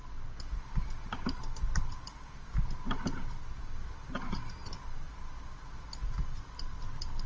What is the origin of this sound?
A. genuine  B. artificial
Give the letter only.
A